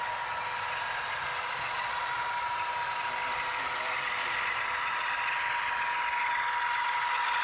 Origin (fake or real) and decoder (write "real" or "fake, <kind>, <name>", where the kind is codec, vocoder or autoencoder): real